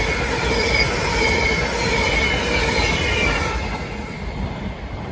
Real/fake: real